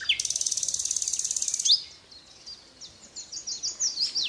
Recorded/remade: recorded